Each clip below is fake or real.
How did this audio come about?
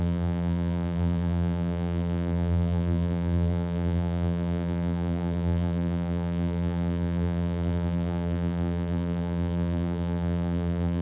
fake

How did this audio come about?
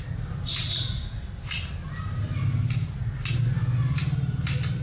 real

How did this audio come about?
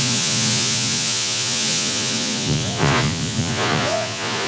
fake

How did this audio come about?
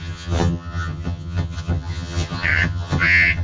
fake